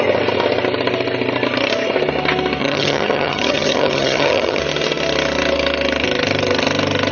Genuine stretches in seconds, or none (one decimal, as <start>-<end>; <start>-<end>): 0.0-2.6; 4.6-7.1